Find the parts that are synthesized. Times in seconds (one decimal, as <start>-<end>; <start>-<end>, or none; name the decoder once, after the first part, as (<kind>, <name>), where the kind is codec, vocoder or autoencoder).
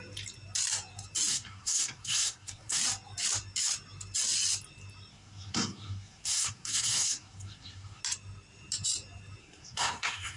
1.3-2.8 (codec, SNAC); 5.1-8.0; 9.4-10.4